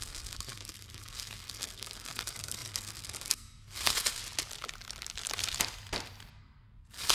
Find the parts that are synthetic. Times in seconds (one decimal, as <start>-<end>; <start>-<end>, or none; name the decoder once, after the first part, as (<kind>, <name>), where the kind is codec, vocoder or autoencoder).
0.0-4.2 (codec, SNAC); 6.4-7.1